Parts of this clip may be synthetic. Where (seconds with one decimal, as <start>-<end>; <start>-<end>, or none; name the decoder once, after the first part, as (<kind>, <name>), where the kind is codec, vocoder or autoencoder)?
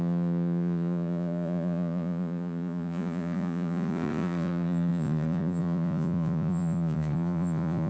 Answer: 0.0-7.9 (vocoder, Vocos)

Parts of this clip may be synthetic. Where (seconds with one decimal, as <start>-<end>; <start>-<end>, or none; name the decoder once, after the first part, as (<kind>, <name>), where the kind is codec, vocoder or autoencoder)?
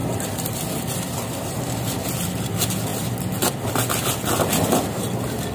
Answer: none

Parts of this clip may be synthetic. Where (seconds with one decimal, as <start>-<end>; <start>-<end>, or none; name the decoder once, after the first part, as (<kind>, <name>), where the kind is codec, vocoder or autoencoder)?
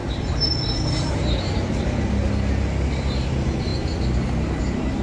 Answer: none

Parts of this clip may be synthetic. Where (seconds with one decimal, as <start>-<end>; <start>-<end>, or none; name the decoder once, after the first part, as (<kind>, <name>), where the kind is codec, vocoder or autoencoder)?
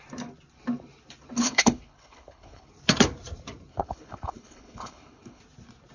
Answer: 1.4-2.7 (codec, HILCodec); 3.7-5.4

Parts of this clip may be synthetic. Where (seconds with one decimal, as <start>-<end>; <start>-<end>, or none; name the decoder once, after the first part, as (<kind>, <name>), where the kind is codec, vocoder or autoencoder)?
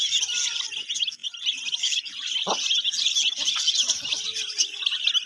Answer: none